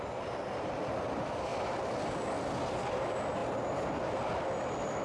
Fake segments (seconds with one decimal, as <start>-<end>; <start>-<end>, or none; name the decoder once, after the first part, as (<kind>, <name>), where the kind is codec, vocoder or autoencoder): none